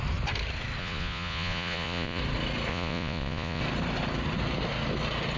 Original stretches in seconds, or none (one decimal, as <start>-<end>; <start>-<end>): 0.0-0.8; 2.2-2.7; 3.6-5.4